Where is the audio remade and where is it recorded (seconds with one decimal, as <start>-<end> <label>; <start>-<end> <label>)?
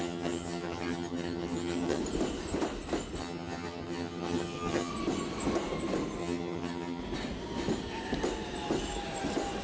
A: 0.0-2.0 remade; 2.0-3.2 recorded; 3.2-4.9 remade; 4.9-6.2 recorded; 6.2-7.0 remade; 7.0-9.6 recorded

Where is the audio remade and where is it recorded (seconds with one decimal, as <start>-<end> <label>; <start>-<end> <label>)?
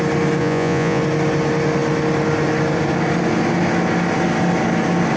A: 0.0-0.4 recorded; 0.4-1.0 remade; 1.0-5.2 recorded